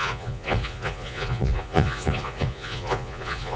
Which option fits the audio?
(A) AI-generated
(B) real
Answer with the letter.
A